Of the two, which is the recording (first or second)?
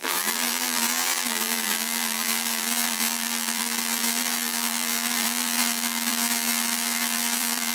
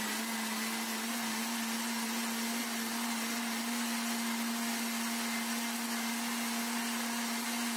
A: second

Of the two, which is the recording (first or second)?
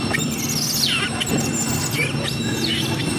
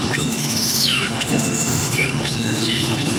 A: first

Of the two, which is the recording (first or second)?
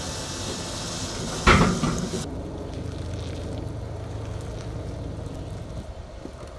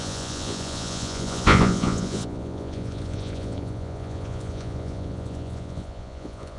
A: first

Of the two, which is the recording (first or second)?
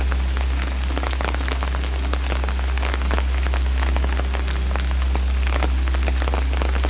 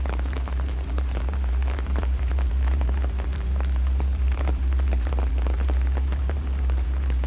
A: first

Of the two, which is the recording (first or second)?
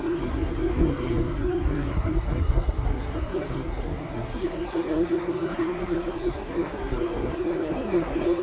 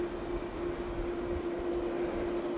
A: second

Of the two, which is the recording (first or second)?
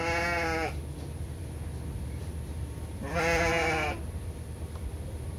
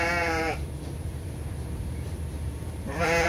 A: first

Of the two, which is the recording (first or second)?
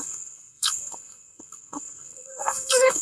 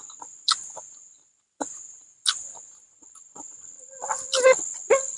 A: second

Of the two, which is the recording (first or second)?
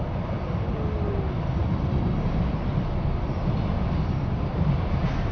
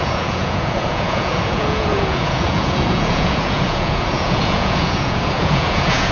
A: first